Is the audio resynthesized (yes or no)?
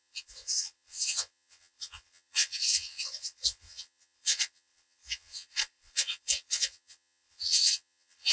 yes